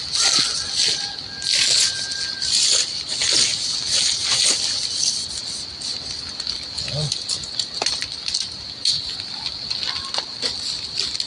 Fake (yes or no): no